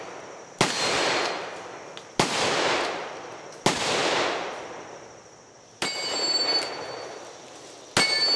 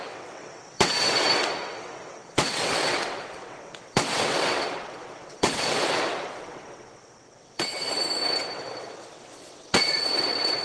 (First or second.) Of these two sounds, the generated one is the second